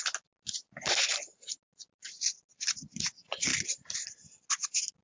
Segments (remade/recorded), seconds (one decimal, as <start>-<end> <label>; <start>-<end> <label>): 0.0-5.0 recorded